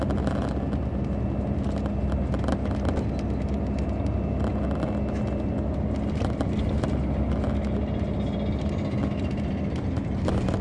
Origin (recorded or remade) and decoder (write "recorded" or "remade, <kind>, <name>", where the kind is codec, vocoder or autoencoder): recorded